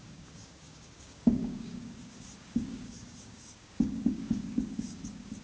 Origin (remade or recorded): remade